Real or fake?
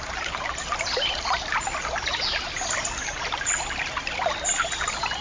real